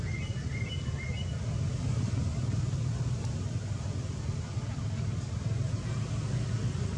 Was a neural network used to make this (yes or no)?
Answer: no